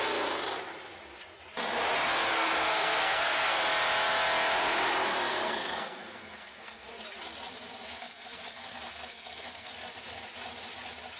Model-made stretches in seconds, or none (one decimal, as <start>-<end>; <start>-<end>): 2.3-3.6; 5.3-6.9; 8.0-9.7